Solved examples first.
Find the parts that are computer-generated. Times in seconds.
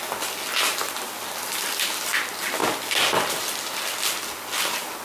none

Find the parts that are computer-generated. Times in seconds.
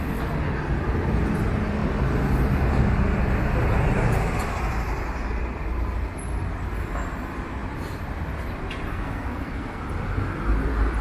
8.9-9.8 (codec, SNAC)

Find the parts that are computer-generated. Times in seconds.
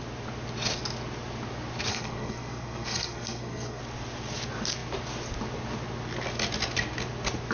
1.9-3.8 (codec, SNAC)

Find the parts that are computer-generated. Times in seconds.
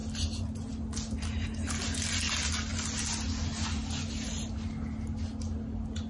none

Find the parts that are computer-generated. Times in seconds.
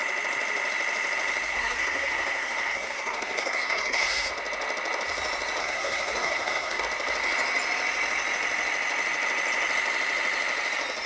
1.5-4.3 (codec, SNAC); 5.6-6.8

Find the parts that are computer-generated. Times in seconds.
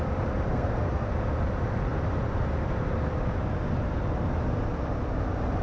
0.5-1.1 (codec, SNAC)